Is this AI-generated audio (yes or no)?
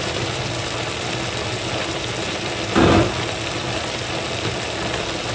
no